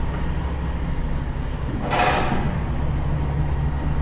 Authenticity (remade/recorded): recorded